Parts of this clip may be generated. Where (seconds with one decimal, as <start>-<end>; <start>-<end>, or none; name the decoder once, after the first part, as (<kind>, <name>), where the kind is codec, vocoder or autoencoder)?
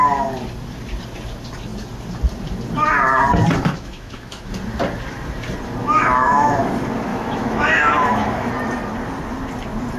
3.7-4.5 (autoencoder, DAC-VAE); 5.8-6.5; 7.1-8.5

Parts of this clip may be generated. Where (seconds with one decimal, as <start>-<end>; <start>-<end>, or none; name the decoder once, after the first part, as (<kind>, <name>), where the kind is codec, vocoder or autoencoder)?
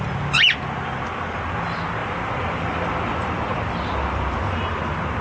2.0-5.2 (vocoder, BigVGAN v2)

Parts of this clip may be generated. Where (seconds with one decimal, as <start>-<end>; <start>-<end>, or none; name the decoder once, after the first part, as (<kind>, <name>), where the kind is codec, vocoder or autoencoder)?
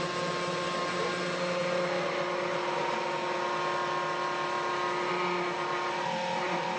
none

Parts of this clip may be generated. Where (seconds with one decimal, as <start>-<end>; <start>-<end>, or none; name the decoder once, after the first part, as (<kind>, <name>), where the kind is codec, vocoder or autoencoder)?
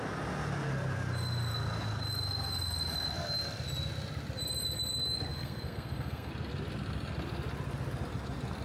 5.3-6.3 (codec, SNAC)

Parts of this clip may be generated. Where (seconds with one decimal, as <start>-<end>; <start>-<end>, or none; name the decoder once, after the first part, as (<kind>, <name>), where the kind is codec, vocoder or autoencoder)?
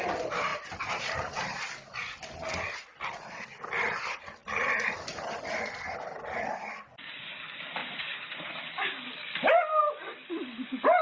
0.5-1.5 (vocoder, BigVGAN v2); 7.8-8.6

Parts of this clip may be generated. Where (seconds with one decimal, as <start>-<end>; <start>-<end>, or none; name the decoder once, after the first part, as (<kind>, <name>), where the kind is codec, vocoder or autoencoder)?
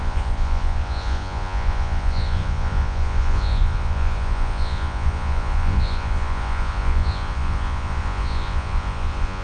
0.0-9.4 (vocoder, Vocos)